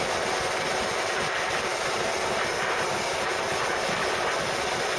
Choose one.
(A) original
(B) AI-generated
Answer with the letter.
A